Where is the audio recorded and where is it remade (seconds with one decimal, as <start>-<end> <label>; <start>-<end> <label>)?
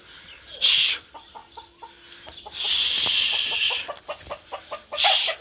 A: 0.0-5.4 recorded